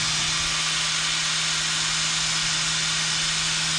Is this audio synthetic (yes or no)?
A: no